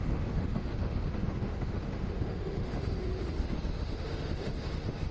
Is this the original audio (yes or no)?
no